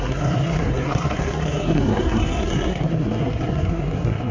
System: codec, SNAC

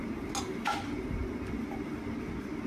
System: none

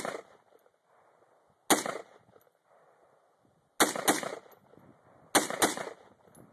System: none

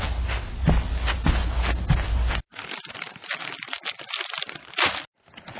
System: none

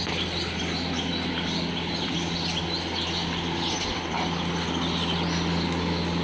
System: none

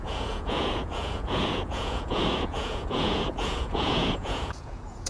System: vocoder, Vocos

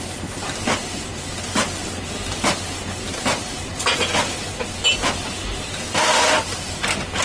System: none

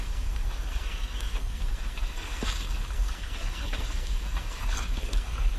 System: codec, SNAC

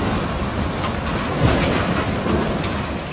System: none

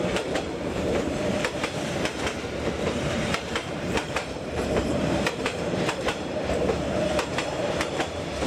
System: vocoder, BigVGAN v2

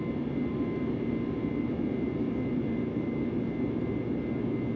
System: none